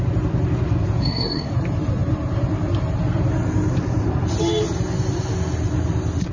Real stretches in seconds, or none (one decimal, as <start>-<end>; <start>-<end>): 0.0-1.0; 1.5-6.3